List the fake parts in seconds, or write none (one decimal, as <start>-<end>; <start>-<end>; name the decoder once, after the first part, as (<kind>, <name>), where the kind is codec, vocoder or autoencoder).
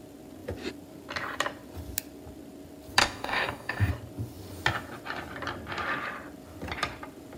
3.0-3.9 (codec, DAC)